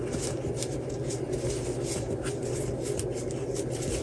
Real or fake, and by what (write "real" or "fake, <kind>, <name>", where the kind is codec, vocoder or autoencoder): real